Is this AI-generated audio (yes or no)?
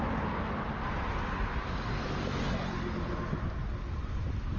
no